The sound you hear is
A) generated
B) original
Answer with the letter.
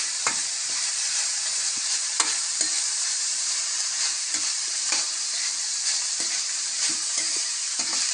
A